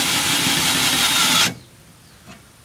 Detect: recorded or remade recorded